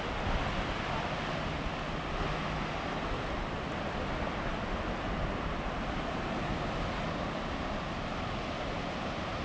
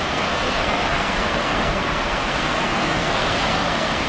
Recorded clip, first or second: first